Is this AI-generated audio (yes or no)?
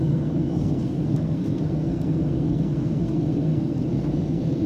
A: yes